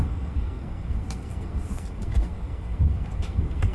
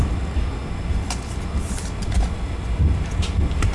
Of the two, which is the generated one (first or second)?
first